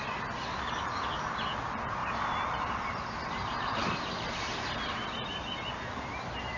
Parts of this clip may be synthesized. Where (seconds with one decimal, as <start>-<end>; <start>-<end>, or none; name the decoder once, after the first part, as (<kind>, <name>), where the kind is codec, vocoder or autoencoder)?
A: none